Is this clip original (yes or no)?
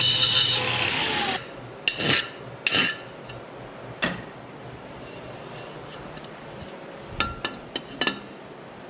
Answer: yes